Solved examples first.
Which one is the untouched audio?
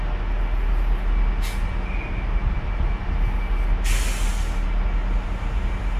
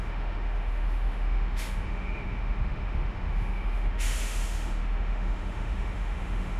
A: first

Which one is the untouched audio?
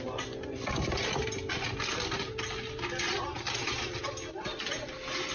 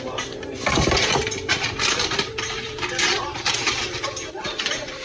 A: first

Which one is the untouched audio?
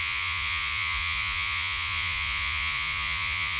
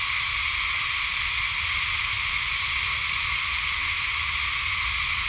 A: second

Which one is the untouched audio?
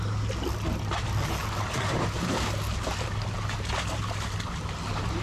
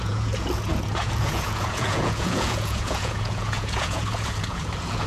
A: first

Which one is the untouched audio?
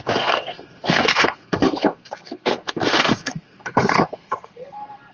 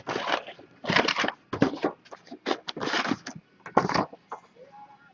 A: second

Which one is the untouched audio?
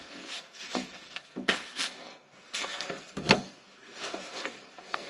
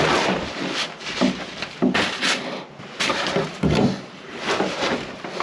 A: second